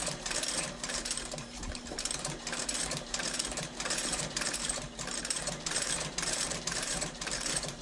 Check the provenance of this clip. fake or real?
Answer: fake